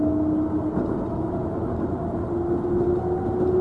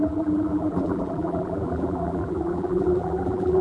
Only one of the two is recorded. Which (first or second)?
first